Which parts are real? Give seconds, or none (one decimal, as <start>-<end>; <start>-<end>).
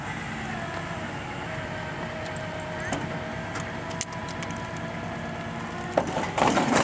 0.0-6.8